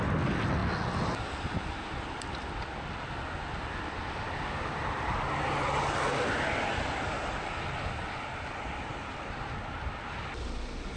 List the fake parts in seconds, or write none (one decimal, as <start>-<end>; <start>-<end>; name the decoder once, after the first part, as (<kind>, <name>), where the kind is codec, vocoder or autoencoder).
none